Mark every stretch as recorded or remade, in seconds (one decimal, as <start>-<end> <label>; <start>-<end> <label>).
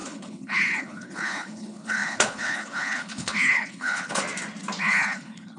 0.0-4.2 remade; 4.2-4.8 recorded; 4.8-5.6 remade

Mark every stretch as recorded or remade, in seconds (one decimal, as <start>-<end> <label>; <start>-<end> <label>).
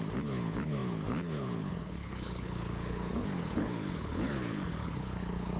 0.0-5.6 remade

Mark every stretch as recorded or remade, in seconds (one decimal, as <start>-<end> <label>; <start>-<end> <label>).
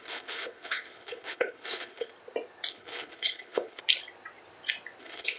0.0-2.1 remade; 2.1-2.7 recorded; 2.7-3.8 remade; 3.8-5.0 recorded; 5.0-5.4 remade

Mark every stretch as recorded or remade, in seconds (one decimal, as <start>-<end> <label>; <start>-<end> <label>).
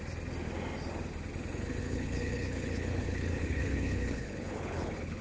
0.0-1.8 recorded; 1.8-5.2 remade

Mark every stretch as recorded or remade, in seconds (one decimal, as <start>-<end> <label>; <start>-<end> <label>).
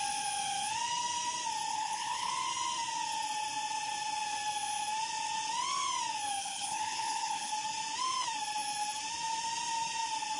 0.0-1.7 recorded; 1.7-2.3 remade; 2.3-6.4 recorded; 6.4-7.5 remade; 7.5-10.4 recorded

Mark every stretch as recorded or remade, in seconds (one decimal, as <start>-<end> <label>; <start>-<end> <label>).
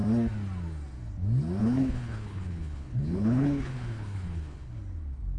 0.0-1.6 recorded; 1.6-4.8 remade; 4.8-5.4 recorded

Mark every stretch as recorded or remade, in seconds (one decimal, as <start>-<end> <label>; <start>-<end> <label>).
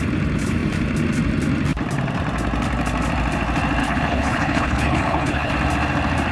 0.0-3.8 recorded; 3.8-5.5 remade; 5.5-6.3 recorded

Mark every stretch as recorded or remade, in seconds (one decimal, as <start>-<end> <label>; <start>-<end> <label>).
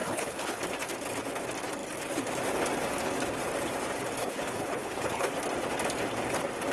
0.0-0.6 remade; 0.6-4.2 recorded; 4.2-5.3 remade; 5.3-6.7 recorded